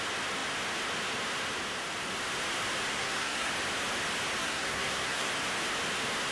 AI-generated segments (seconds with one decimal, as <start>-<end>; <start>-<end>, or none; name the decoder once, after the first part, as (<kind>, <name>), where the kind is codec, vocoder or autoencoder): 2.9-3.5 (codec, SNAC); 4.4-5.3